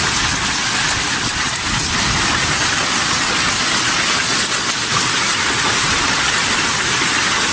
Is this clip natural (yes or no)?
yes